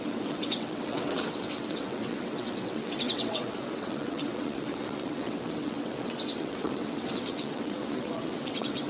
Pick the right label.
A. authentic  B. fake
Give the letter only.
B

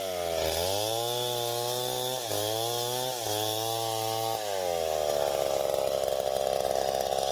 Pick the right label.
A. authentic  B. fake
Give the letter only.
A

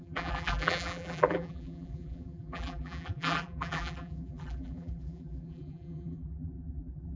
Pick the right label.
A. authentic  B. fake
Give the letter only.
B